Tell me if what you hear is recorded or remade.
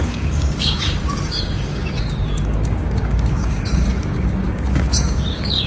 remade